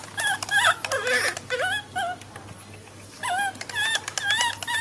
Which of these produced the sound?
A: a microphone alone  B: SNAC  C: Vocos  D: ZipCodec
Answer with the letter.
A